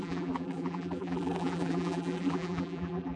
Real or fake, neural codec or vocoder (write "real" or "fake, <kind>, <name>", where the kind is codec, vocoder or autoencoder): fake, vocoder, BigVGAN v2